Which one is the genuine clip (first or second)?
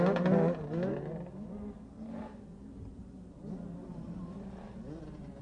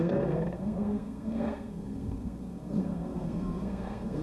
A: first